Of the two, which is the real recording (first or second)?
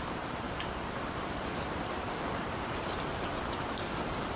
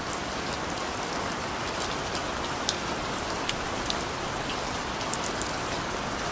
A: second